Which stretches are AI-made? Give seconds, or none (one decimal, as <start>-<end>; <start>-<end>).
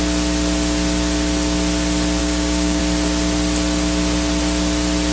2.2-2.8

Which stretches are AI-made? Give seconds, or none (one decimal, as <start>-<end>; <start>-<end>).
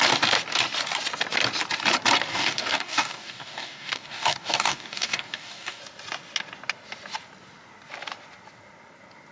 2.3-5.8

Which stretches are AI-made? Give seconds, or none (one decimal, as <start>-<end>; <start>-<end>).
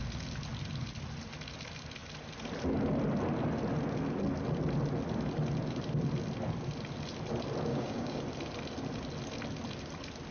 7.7-8.2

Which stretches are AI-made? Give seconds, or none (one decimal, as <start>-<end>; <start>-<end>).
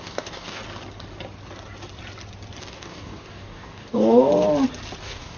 0.0-0.6; 2.6-4.3; 5.0-5.4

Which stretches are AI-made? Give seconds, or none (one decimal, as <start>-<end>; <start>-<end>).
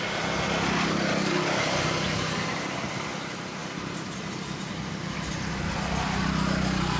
1.1-1.6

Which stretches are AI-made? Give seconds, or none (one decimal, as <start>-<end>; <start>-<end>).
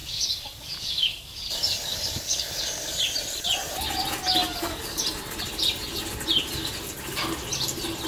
0.0-3.0; 4.4-5.0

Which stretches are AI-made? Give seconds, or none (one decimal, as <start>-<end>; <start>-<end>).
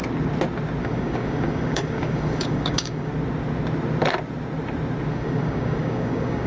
0.8-3.1; 5.1-6.5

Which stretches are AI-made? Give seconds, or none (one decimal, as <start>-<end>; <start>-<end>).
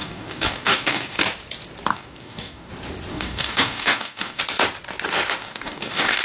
0.0-1.2; 1.9-2.7; 3.1-4.4; 5.4-6.2